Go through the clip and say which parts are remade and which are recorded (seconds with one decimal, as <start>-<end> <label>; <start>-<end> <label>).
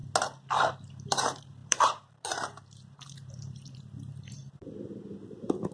0.0-0.9 recorded; 0.9-4.4 remade; 4.4-5.2 recorded; 5.2-5.7 remade